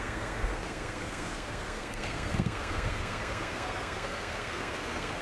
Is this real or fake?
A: fake